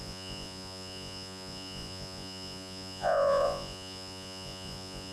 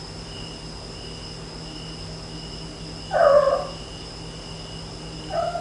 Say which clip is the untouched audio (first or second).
second